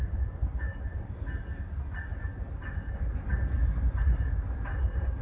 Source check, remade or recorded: recorded